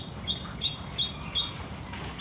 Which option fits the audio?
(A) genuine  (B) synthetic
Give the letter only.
A